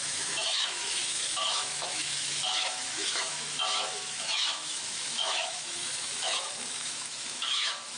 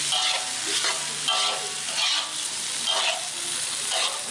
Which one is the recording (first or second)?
second